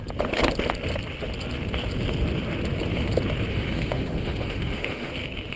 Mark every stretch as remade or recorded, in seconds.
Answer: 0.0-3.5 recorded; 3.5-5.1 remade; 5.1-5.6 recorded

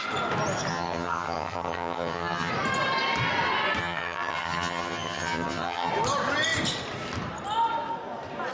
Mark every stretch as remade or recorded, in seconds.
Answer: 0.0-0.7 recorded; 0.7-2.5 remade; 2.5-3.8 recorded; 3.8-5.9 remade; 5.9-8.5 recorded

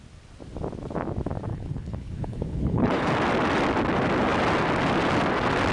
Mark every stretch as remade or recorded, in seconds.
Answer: 0.0-1.5 recorded; 1.5-3.1 remade; 3.1-5.7 recorded